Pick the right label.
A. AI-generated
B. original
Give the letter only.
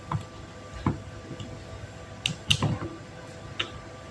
B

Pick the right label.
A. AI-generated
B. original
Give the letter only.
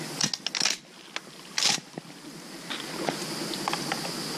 B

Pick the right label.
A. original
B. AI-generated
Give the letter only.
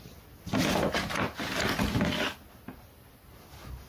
A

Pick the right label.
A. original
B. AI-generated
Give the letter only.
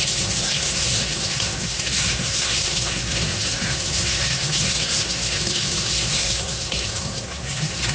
B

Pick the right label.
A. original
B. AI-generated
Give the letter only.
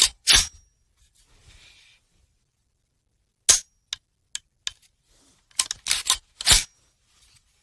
A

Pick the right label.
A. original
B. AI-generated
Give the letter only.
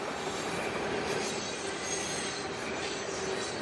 A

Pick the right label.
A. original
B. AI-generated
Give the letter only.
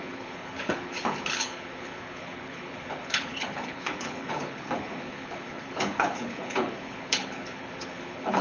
B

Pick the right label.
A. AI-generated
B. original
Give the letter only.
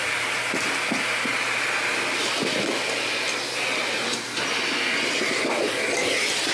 B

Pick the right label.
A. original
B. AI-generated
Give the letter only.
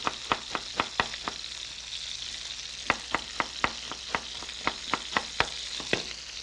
A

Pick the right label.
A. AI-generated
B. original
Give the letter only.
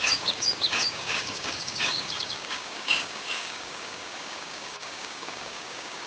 A